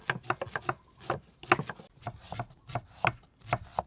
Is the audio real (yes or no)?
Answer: yes